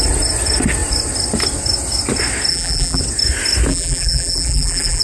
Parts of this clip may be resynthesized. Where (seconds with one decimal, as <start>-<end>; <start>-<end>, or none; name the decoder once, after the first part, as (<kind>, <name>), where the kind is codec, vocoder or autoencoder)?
2.5-3.0 (vocoder, BigVGAN v2); 3.7-5.0